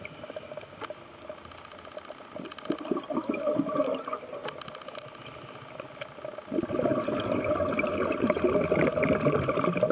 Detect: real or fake real